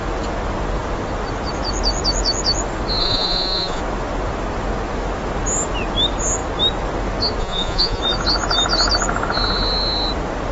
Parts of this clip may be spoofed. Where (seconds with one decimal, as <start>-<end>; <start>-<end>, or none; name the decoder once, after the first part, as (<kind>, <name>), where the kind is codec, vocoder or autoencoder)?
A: 3.0-3.8 (vocoder, Vocos); 7.4-8.0